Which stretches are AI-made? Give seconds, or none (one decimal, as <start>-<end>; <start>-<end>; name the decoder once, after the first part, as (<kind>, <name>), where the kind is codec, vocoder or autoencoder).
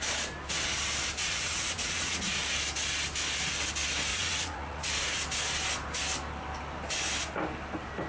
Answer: 1.2-2.2 (vocoder, Vocos); 4.1-4.9